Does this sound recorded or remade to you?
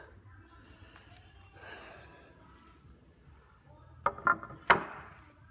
recorded